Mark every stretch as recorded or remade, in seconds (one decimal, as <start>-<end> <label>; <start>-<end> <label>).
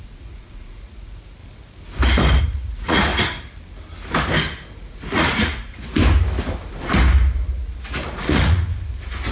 0.0-1.4 remade; 1.4-2.4 recorded; 2.4-3.1 remade; 3.1-4.9 recorded; 4.9-6.0 remade; 6.0-8.2 recorded; 8.2-8.7 remade; 8.7-9.3 recorded